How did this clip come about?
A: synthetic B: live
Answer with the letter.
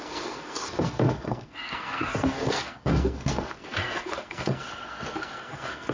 A